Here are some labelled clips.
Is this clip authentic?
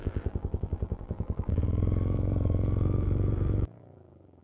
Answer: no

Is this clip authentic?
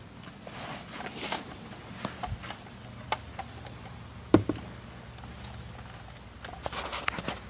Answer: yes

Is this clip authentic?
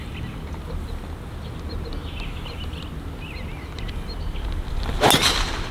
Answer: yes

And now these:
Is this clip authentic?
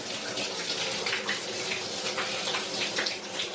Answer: yes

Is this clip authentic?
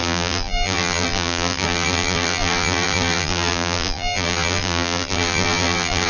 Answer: no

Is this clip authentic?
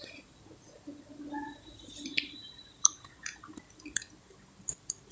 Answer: no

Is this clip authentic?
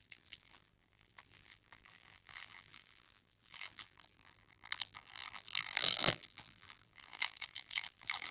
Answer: no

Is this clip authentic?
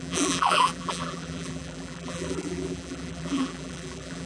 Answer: no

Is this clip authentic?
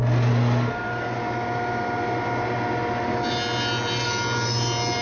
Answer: yes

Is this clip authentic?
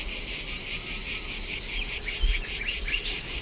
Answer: yes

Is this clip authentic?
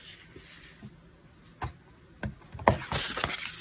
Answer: yes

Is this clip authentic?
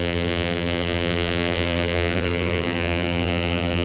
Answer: no